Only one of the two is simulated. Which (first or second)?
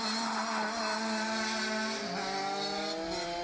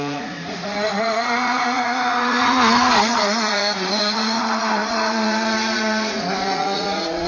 second